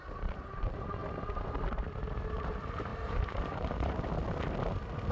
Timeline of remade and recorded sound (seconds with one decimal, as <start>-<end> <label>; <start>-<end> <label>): 0.0-1.0 remade; 1.0-2.3 recorded; 2.3-5.1 remade